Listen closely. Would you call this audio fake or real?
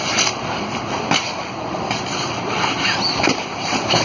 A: fake